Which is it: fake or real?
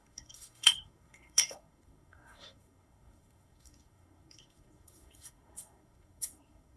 fake